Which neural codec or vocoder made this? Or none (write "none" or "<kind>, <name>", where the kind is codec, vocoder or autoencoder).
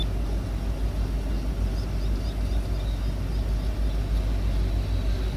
none